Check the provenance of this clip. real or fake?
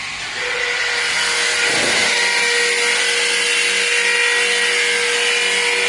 real